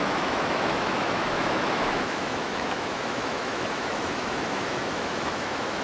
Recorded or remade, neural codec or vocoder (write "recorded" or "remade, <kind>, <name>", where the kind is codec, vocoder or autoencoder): remade, autoencoder, DAC-VAE